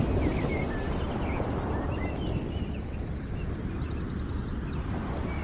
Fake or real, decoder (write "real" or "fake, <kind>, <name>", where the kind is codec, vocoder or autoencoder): real